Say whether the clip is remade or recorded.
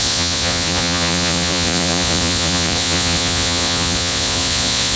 remade